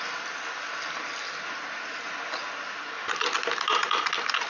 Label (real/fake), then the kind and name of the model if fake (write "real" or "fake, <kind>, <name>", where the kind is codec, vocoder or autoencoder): real